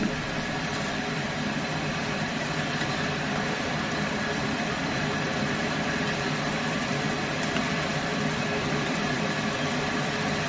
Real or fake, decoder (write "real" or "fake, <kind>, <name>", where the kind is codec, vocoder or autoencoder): fake, vocoder, BigVGAN v2